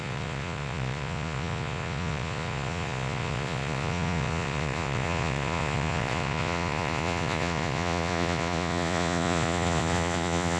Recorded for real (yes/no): no